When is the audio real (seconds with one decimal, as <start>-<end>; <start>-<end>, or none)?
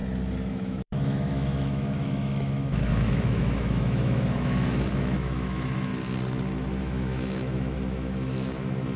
0.0-0.5; 5.9-6.8